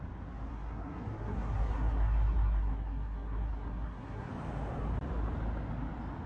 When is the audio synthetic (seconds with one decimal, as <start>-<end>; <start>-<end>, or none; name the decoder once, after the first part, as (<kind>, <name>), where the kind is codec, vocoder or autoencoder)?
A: 0.5-4.3 (codec, SNAC)